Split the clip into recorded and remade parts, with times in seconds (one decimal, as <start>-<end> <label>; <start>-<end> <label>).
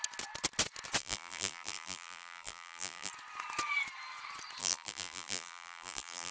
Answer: 0.0-1.0 recorded; 1.0-3.1 remade; 3.1-4.6 recorded; 4.6-6.3 remade